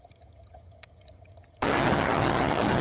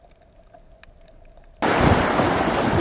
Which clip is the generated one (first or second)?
first